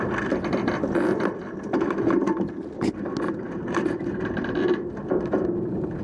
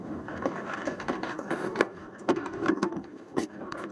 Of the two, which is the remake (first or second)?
second